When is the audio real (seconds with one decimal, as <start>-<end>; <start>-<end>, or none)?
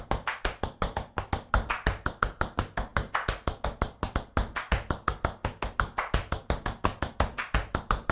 0.0-8.1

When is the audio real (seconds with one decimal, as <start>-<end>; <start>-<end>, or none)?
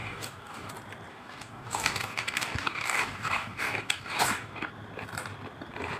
0.7-1.1; 4.7-6.0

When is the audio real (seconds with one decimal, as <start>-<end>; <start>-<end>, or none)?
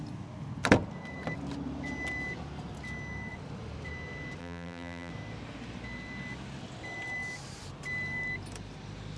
0.0-4.4; 5.1-9.2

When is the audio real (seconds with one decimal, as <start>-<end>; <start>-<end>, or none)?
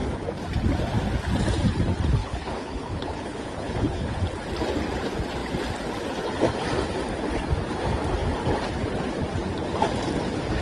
0.0-2.2; 4.2-10.6